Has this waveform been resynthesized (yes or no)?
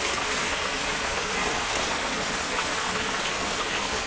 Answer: yes